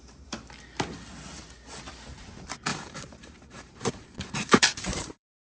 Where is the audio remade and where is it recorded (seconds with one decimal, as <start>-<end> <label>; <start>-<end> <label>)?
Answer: 0.0-2.7 recorded; 2.7-5.5 remade